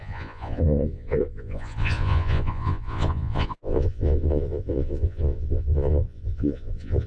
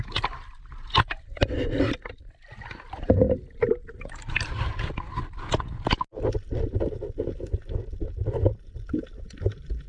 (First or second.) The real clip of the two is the second